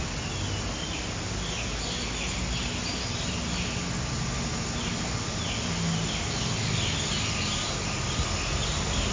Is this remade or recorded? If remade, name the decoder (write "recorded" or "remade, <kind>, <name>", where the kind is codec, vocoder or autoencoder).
recorded